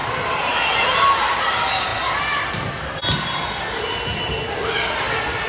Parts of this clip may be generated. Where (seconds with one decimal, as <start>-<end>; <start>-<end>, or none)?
none